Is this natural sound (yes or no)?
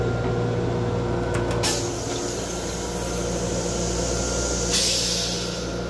yes